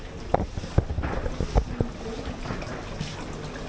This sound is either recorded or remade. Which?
recorded